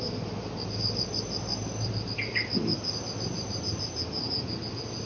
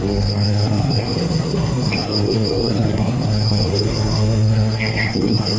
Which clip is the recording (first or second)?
first